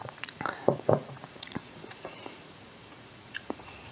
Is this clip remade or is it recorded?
remade